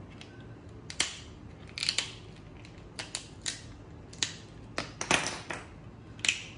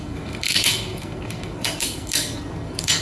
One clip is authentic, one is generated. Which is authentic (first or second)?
first